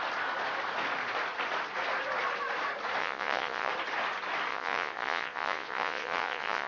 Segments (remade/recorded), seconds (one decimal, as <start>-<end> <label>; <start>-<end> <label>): 0.0-3.0 recorded; 3.0-3.7 remade; 3.7-4.5 recorded; 4.5-6.7 remade